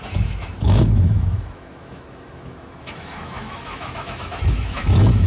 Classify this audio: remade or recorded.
remade